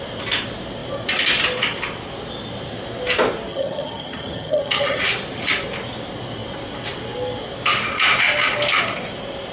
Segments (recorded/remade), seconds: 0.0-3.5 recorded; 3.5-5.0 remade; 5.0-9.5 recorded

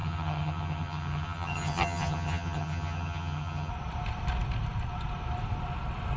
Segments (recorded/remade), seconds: 0.0-3.7 remade; 3.7-6.2 recorded